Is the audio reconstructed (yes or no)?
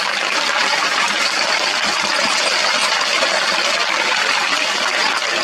no